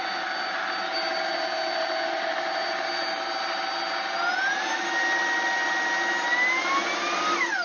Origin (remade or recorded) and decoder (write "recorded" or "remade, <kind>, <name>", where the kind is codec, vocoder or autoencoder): recorded